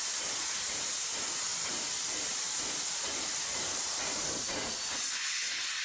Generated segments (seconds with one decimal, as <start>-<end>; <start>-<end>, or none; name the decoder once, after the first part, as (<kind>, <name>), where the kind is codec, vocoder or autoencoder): 1.5-4.9 (vocoder, BigVGAN v2)